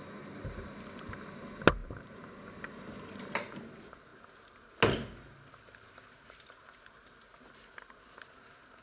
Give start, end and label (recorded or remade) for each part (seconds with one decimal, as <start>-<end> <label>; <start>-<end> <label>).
0.0-1.8 recorded; 1.8-3.2 remade; 3.2-8.8 recorded